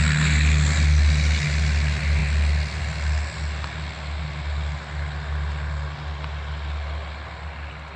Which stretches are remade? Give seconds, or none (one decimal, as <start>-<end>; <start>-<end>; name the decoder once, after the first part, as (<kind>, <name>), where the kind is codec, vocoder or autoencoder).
none